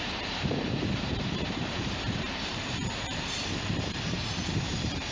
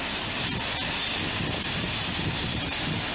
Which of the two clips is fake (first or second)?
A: first